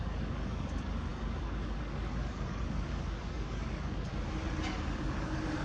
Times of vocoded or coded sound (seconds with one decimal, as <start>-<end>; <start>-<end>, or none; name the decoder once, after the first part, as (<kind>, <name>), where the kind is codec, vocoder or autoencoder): 0.0-4.1 (codec, DAC); 4.7-5.6